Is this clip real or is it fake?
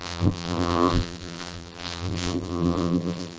fake